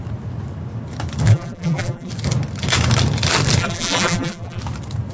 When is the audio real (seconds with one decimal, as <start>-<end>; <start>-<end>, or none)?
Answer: 0.0-1.3; 2.1-3.6; 4.6-5.1

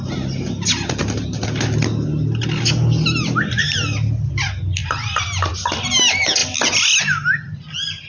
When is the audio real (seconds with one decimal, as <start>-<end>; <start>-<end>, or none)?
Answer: 0.0-6.4; 7.0-8.1